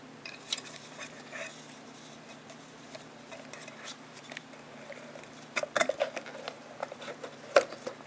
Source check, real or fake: fake